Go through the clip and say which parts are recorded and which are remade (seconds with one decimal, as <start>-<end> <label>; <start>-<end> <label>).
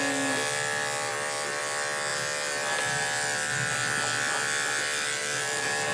0.0-5.9 recorded